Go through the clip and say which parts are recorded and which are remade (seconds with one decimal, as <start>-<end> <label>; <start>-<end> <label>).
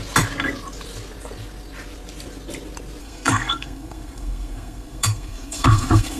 0.0-3.0 recorded; 3.0-6.2 remade